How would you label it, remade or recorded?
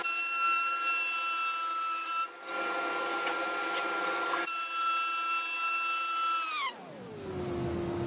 recorded